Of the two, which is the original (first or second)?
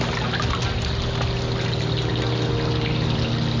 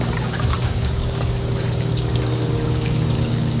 first